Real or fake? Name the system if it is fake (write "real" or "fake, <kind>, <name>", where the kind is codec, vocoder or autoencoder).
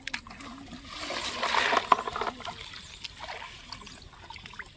real